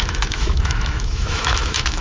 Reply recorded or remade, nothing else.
remade